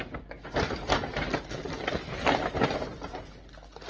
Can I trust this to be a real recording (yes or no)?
yes